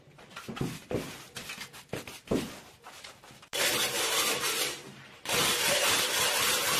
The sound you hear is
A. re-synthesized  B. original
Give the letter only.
B